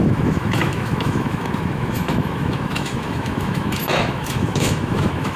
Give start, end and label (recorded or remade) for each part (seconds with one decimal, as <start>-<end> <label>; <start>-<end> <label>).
0.0-5.4 remade